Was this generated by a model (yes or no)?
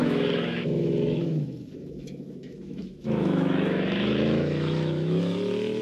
yes